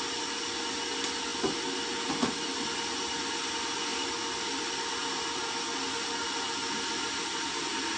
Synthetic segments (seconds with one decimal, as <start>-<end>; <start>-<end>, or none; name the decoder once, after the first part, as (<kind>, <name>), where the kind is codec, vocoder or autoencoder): 3.9-4.7 (vocoder, BigVGAN v2)